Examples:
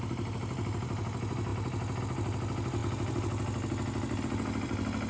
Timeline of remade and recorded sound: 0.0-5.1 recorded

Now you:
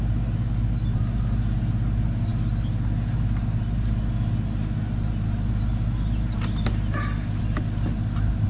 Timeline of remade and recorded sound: 0.0-8.5 recorded